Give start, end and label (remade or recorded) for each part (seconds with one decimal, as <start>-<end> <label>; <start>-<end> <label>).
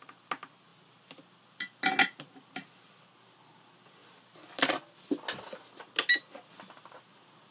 0.0-7.5 recorded